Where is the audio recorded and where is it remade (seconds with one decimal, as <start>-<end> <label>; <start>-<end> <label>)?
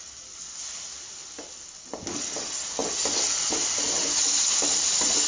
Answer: 0.0-5.3 recorded